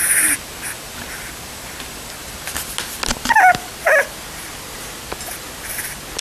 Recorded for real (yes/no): yes